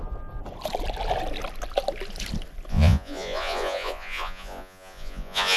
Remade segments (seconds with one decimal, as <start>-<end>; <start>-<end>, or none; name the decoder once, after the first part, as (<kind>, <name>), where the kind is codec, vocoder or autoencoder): 2.7-5.6 (vocoder, Vocos)